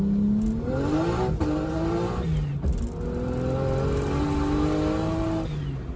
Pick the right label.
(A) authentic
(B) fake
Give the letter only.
A